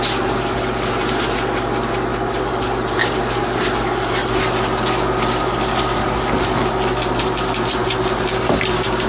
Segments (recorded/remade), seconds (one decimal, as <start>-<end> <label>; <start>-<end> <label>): 0.0-9.1 recorded